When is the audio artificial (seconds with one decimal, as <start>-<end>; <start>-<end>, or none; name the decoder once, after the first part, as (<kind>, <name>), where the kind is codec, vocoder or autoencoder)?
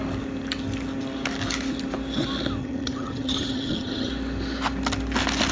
2.6-4.1 (vocoder, HiFi-GAN)